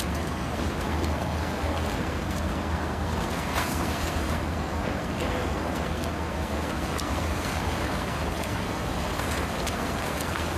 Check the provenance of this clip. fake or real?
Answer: fake